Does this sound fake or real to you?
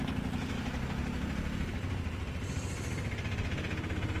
real